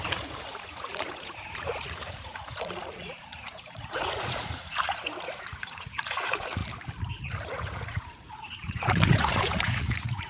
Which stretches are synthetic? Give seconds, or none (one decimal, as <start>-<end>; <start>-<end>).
0.0-6.6; 7.2-10.3